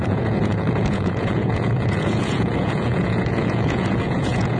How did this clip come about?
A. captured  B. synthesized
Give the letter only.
B